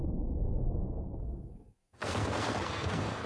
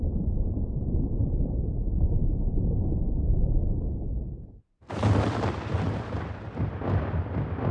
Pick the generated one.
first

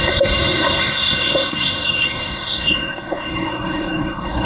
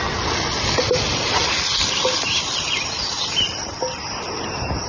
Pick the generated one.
first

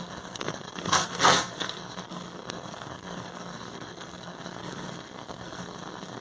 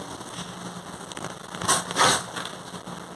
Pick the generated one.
first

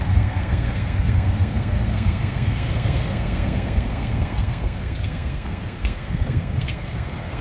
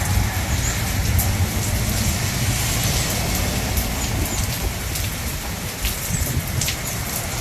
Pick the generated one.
first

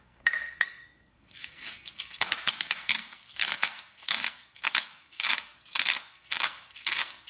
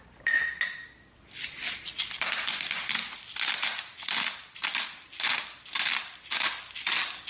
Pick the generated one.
first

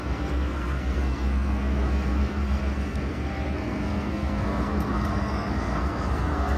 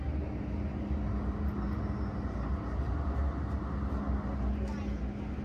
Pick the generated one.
first